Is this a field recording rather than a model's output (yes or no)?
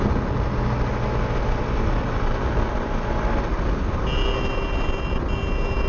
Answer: yes